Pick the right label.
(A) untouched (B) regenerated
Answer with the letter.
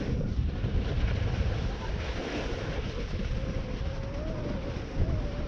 A